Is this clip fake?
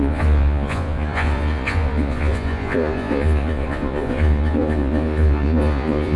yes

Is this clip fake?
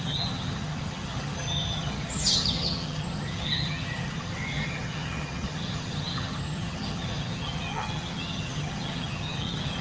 yes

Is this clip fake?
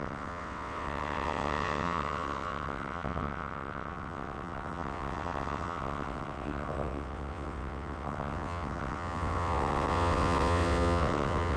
yes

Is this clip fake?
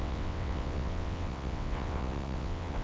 yes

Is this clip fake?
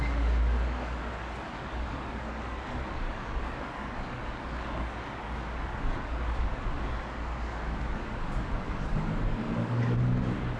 yes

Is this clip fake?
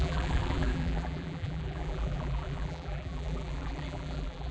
yes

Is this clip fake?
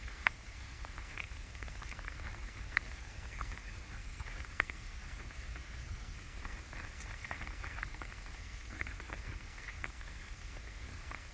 yes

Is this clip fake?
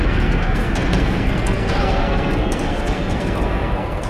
yes